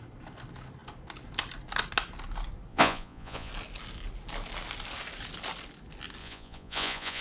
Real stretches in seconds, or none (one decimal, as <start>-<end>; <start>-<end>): 0.0-2.7; 3.5-6.2